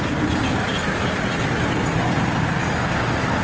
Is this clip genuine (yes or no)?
yes